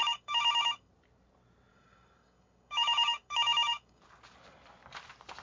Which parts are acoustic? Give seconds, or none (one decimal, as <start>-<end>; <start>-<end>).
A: 0.9-1.7; 4.0-5.4